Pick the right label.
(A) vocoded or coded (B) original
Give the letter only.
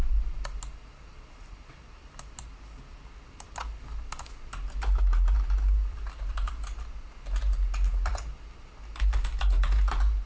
B